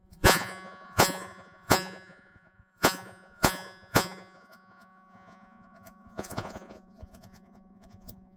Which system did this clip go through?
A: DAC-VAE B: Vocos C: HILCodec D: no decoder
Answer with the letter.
B